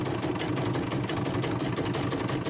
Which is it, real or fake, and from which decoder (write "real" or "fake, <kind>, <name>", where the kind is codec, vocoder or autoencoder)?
real